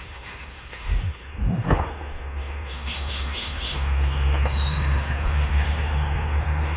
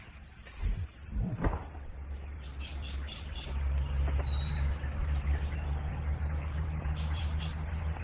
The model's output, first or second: first